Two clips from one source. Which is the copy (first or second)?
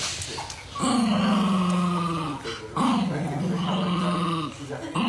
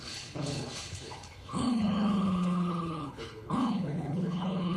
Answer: second